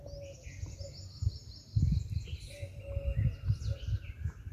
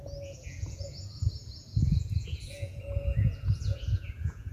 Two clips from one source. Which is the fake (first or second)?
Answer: second